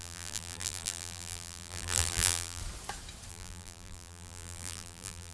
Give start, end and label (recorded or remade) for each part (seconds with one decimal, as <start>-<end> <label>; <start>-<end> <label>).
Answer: 0.0-2.6 remade; 2.6-3.3 recorded; 3.3-5.3 remade